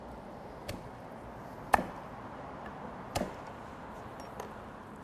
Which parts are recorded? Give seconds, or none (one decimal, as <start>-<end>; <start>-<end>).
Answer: 0.0-5.0